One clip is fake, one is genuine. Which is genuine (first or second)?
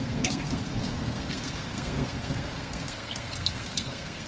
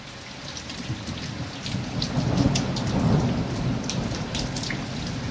second